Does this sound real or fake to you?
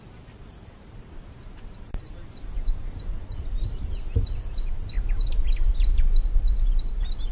real